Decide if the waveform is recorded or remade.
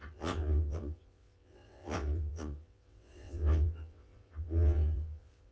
remade